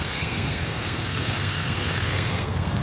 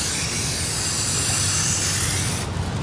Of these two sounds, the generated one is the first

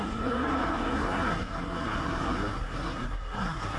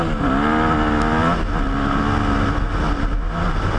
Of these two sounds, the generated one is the first